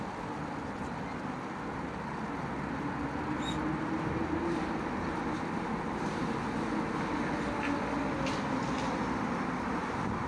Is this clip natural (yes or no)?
yes